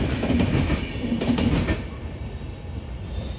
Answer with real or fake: real